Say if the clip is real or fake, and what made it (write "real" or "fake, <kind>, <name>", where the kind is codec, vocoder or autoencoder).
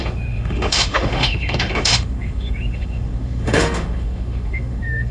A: fake, autoencoder, DAC-VAE